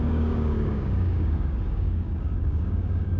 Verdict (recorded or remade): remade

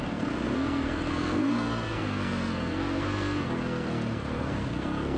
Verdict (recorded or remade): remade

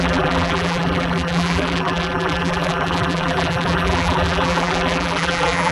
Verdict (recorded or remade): remade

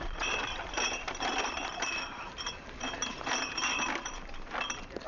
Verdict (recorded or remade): remade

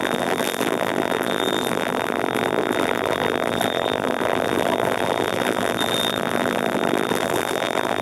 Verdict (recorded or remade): remade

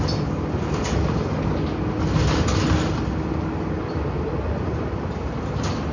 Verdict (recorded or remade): recorded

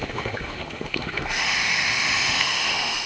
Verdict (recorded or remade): remade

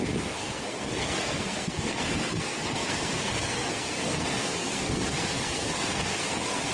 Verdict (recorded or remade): remade